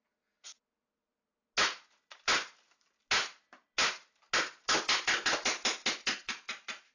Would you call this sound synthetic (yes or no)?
no